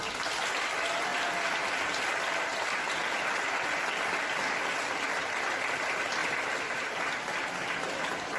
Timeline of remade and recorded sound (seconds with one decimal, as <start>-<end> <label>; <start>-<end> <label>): 0.0-6.2 recorded; 6.2-6.9 remade; 6.9-8.4 recorded